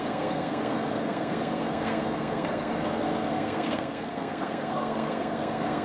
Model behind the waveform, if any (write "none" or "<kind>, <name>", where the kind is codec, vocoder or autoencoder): codec, SNAC